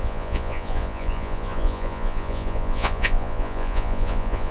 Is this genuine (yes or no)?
no